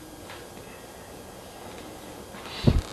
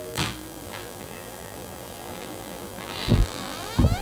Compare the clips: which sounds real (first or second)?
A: first